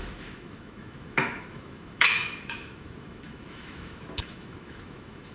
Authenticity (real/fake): fake